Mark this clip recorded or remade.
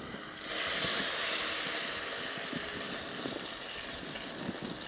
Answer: recorded